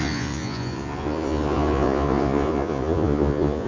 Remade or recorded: remade